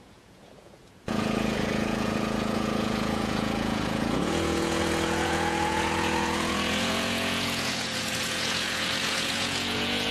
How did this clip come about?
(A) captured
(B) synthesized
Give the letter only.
B